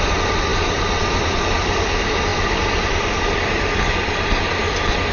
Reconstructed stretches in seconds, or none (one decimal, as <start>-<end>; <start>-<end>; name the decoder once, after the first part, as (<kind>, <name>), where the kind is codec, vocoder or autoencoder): none